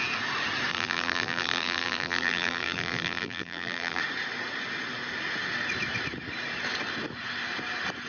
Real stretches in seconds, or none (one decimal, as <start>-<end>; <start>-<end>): 0.0-0.7; 4.0-8.1